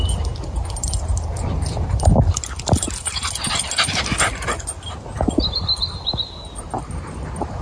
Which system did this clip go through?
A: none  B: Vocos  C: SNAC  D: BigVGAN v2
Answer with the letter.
A